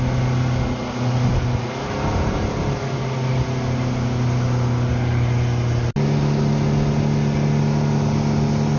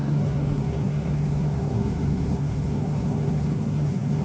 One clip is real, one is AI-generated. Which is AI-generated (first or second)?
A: second